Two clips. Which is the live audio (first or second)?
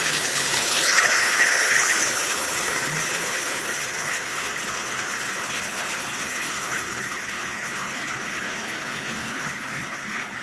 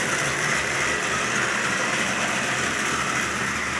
second